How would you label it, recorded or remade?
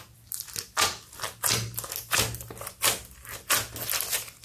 recorded